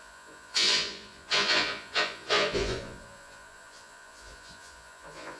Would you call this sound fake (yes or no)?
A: yes